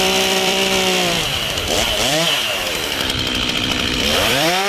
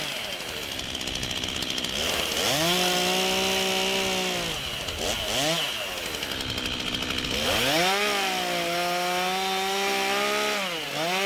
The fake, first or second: first